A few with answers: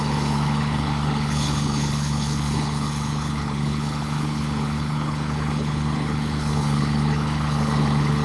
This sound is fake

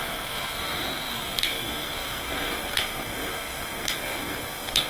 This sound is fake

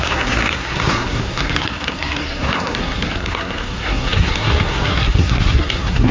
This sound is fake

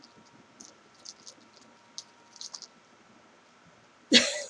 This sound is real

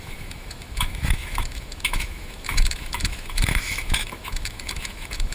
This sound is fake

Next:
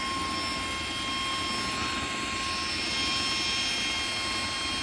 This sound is real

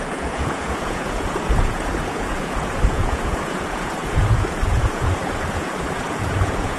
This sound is fake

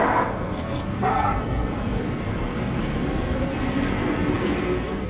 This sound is fake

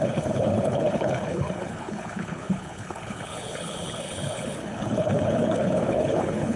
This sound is fake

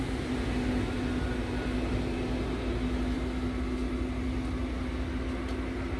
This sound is real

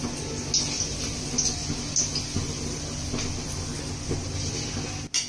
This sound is real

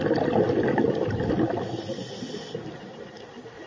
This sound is fake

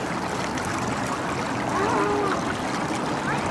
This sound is real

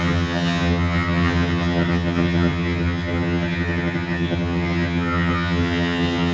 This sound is fake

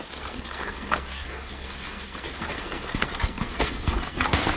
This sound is fake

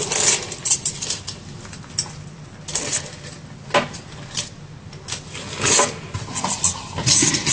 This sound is real